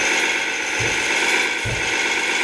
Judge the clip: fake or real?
real